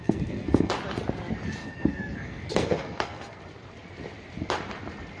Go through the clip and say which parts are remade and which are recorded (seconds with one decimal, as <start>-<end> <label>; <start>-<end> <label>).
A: 0.0-0.7 remade; 0.7-1.6 recorded; 1.6-3.4 remade; 3.4-5.2 recorded